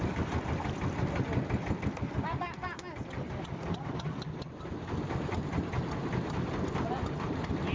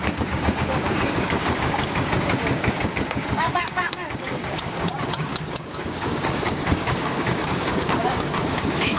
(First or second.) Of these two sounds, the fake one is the second